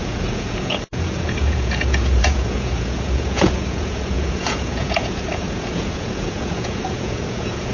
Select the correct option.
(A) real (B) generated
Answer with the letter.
B